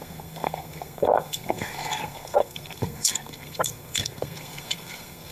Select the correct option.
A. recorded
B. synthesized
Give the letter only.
B